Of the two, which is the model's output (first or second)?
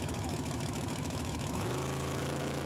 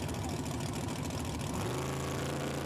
first